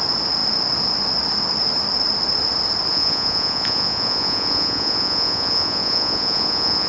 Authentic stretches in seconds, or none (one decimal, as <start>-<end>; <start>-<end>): 0.0-2.9